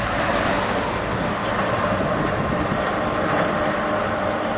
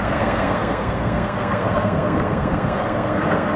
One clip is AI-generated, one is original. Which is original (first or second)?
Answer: first